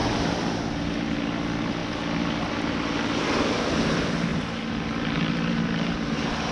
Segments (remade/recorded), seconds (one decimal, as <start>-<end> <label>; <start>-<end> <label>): 0.0-0.5 remade; 0.5-4.3 recorded; 4.3-6.5 remade